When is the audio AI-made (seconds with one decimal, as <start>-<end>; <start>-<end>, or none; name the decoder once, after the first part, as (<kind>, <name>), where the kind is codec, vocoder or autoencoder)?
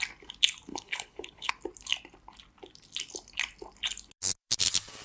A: 0.7-1.5 (codec, HILCodec)